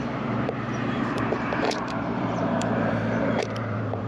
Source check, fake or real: fake